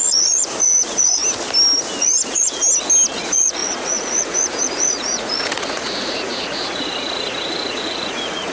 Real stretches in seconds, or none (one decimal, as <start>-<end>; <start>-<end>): 1.2-2.0; 2.6-3.2